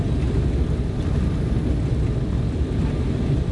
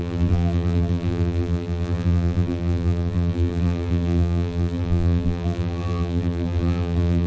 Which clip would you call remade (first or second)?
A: second